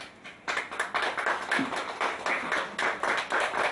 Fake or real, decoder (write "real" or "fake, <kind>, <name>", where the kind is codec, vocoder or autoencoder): real